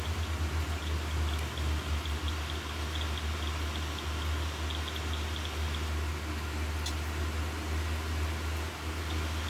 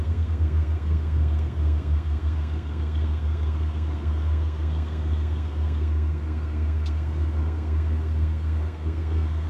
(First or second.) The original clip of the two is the first